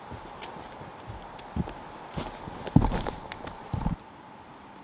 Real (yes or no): yes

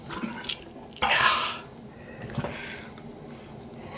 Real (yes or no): yes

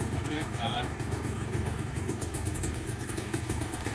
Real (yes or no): no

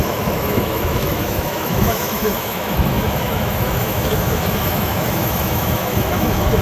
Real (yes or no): no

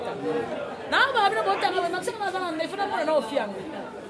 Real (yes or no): yes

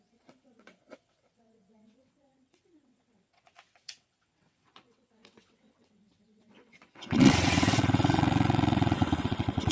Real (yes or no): no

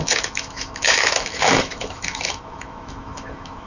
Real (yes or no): no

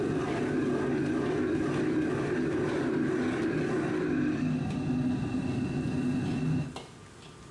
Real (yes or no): yes